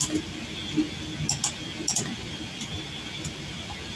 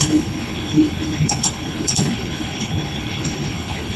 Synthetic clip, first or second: second